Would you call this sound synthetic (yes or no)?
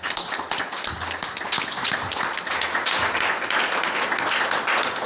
no